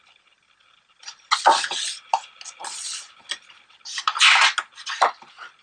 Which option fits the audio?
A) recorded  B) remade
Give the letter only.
A